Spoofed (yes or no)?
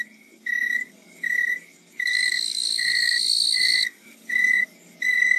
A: yes